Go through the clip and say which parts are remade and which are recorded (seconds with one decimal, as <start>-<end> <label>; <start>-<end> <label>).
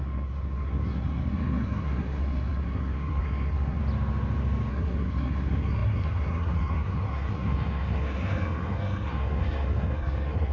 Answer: 0.0-3.8 remade; 3.8-4.7 recorded; 4.7-10.5 remade